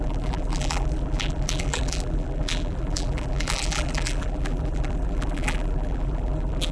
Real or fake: fake